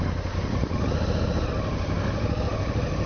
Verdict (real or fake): real